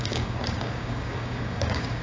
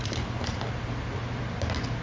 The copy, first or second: first